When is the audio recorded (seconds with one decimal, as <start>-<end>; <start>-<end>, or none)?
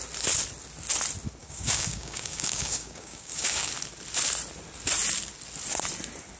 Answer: 0.0-1.4; 3.7-6.4